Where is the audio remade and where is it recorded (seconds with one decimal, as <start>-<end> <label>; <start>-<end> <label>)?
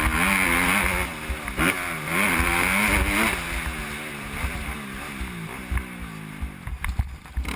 0.0-7.6 recorded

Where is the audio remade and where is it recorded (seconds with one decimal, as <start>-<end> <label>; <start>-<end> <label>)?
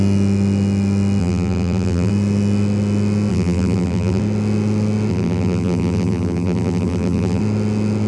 0.0-1.2 recorded; 1.2-2.1 remade; 2.1-3.3 recorded; 3.3-4.2 remade; 4.2-5.1 recorded; 5.1-7.4 remade; 7.4-8.1 recorded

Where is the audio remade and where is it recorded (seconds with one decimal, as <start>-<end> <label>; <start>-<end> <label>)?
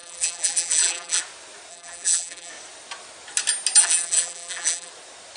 0.0-1.2 remade; 1.2-1.7 recorded; 1.7-2.5 remade; 2.5-3.8 recorded; 3.8-4.9 remade; 4.9-5.4 recorded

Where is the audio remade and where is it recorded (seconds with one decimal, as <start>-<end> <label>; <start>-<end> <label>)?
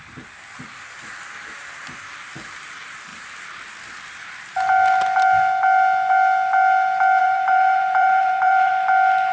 0.0-7.2 recorded; 7.2-8.7 remade; 8.7-9.3 recorded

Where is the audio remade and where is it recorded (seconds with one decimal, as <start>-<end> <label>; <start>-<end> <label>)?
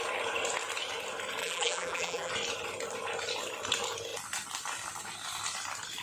0.0-1.4 recorded; 1.4-2.3 remade; 2.3-6.0 recorded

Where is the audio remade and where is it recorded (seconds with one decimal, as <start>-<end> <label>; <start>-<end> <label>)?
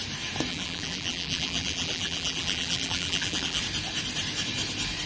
0.0-0.5 recorded; 0.5-3.6 remade; 3.6-5.1 recorded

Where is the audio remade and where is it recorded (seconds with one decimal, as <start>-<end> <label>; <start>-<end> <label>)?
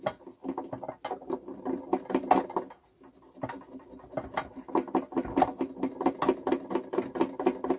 0.0-7.8 recorded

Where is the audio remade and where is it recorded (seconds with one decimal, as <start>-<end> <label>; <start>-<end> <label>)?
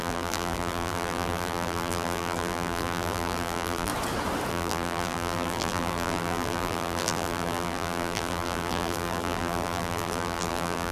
0.0-3.9 remade; 3.9-4.5 recorded; 4.5-10.9 remade